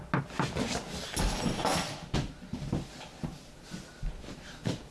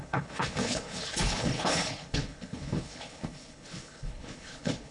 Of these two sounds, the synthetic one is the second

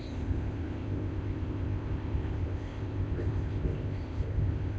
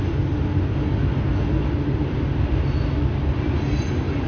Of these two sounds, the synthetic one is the first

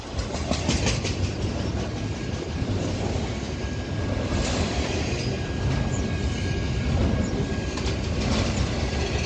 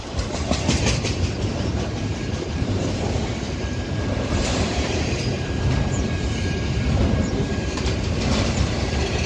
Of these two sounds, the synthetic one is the second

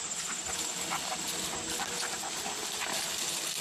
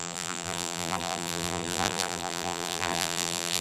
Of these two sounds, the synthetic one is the second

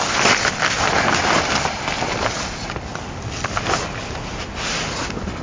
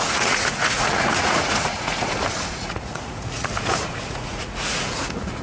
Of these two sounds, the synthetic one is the second